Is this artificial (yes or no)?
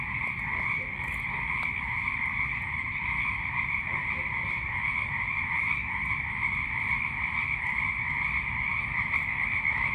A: no